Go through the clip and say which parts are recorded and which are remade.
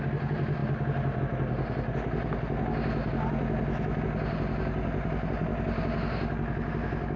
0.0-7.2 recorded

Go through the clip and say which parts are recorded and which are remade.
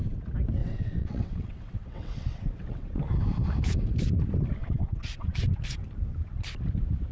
0.0-0.6 recorded; 0.6-3.0 remade; 3.0-4.6 recorded; 4.6-5.5 remade; 5.5-7.1 recorded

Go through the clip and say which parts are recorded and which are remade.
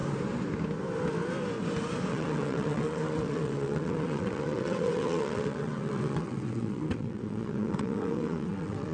0.0-2.1 recorded; 2.1-8.9 remade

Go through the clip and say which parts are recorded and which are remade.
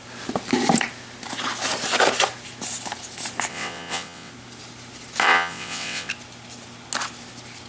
0.0-3.5 recorded; 3.5-4.3 remade; 4.3-5.2 recorded; 5.2-6.1 remade; 6.1-7.7 recorded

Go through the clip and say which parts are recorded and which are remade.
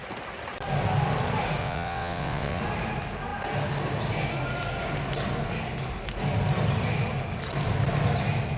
0.0-1.6 recorded; 1.6-2.6 remade; 2.6-8.6 recorded